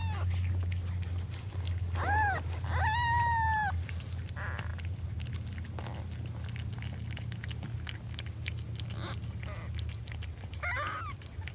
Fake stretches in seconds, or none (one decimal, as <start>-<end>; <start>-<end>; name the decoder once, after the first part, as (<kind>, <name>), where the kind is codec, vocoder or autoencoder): none